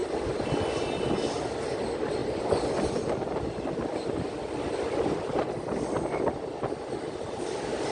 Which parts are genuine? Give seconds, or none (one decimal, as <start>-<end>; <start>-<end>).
0.0-2.2; 6.2-7.9